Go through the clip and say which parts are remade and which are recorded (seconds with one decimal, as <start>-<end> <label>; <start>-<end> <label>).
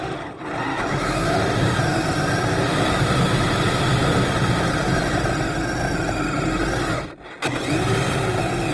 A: 0.0-0.7 recorded; 0.7-1.4 remade; 1.4-8.7 recorded